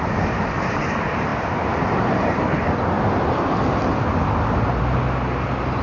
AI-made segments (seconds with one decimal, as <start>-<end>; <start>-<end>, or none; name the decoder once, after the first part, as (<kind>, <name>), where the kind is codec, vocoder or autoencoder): none